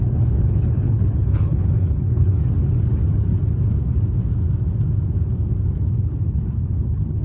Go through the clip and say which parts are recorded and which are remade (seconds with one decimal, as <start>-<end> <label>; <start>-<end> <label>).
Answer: 0.0-2.3 remade; 2.3-5.9 recorded; 5.9-7.2 remade